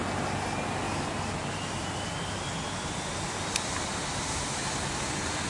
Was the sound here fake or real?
real